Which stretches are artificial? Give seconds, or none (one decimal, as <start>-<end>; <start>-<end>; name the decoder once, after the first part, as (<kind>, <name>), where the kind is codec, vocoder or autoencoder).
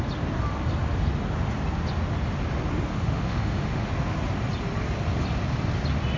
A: 2.9-3.9 (autoencoder, DAC-VAE)